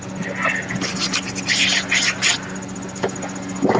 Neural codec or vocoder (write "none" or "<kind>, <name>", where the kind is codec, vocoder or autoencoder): none